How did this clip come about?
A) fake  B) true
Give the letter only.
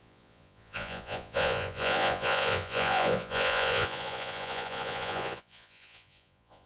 A